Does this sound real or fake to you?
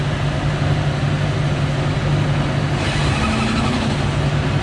real